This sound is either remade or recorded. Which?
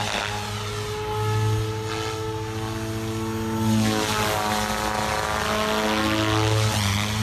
recorded